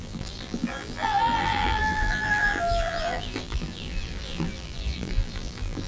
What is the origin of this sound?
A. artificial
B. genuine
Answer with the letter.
A